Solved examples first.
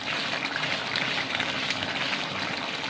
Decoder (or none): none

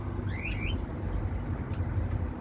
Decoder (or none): none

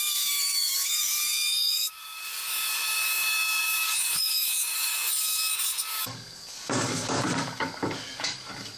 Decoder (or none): codec, DAC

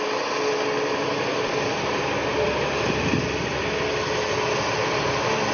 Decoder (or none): none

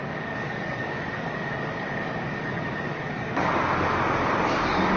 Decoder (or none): codec, DAC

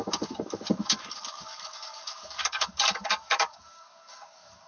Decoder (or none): codec, DAC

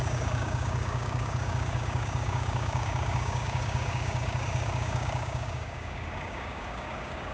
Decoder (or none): codec, DAC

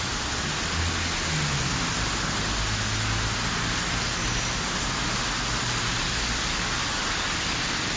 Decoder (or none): none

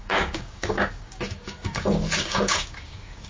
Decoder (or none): codec, DAC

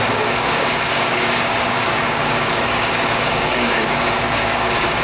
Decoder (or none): codec, DAC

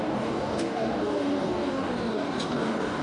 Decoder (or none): codec, DAC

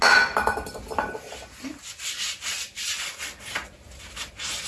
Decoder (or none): none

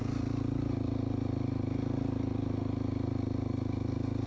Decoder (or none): none